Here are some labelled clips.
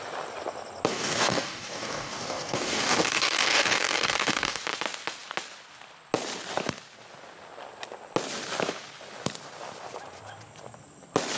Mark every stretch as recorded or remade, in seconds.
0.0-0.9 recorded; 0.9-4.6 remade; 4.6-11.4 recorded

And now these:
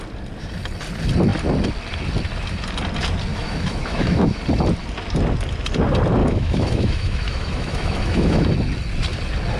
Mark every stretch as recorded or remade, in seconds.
0.0-3.3 recorded; 3.3-4.4 remade; 4.4-6.2 recorded; 6.2-8.5 remade; 8.5-9.6 recorded

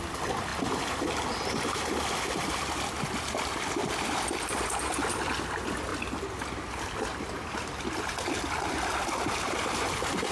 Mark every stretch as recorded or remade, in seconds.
0.0-10.3 recorded

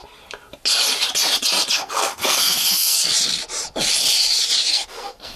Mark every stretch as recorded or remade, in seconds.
0.0-1.7 recorded; 1.7-3.0 remade; 3.0-4.7 recorded; 4.7-5.4 remade

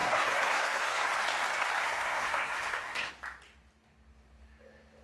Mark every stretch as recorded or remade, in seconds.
0.0-1.1 remade; 1.1-1.8 recorded; 1.8-3.1 remade; 3.1-5.0 recorded

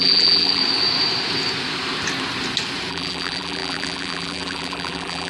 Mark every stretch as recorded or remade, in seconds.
0.0-0.6 remade; 0.6-2.9 recorded; 2.9-5.3 remade